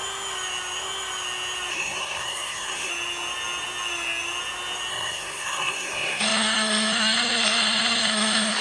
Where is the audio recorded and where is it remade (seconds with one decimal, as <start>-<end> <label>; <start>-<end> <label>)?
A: 0.0-1.7 recorded; 1.7-2.9 remade; 2.9-4.9 recorded; 4.9-8.6 remade